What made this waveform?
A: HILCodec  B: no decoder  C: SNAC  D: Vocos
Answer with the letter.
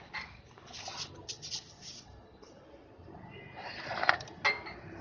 B